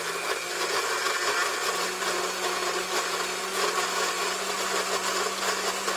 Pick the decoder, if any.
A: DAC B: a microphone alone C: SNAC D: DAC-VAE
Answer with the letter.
B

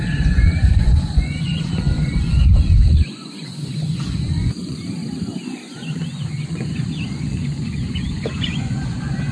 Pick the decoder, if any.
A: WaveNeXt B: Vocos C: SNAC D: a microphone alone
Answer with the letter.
B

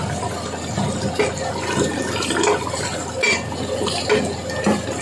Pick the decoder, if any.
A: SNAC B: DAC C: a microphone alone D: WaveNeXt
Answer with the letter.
C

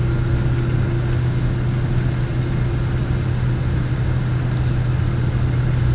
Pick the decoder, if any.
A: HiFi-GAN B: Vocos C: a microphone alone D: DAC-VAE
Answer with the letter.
C